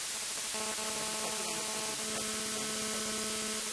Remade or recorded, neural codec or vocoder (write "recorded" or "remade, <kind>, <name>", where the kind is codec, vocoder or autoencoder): recorded